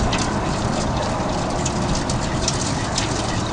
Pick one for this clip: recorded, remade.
recorded